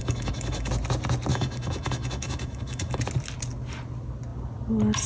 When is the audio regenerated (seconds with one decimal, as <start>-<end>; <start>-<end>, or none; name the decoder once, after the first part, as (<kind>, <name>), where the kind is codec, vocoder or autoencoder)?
0.0-0.7 (autoencoder, DAC-VAE); 1.3-3.0